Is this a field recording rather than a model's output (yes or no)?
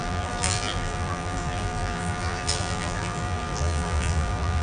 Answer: no